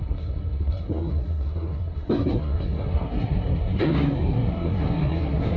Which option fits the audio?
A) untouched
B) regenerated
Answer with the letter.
B